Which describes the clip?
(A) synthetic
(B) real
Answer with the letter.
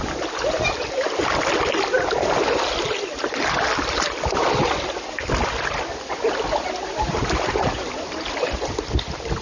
B